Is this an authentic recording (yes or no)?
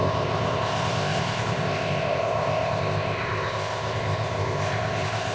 no